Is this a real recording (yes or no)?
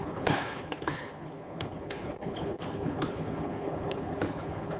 no